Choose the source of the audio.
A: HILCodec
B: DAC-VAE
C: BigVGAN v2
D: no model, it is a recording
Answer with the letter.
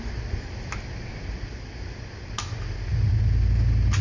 D